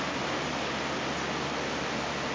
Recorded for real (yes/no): yes